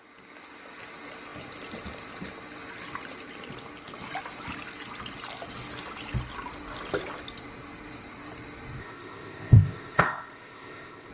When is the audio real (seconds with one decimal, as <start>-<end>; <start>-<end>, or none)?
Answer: 0.0-8.8